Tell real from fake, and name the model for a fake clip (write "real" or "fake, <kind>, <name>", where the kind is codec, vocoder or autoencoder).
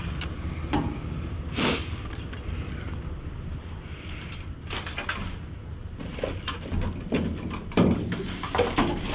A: real